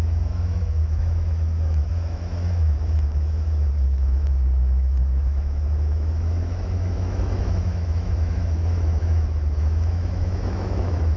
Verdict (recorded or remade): remade